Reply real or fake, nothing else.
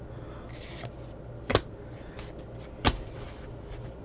real